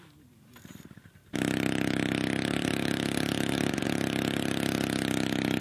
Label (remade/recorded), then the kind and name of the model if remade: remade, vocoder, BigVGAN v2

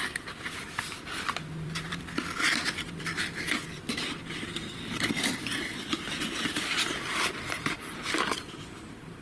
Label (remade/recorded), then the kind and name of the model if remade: remade, vocoder, BigVGAN v2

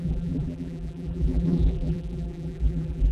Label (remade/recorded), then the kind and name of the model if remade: remade, vocoder, BigVGAN v2